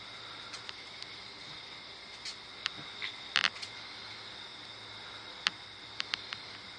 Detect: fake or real real